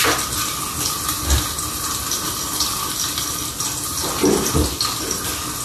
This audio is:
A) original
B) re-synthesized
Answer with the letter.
A